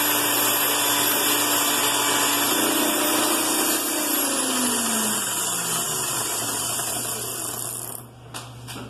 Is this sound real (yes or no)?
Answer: yes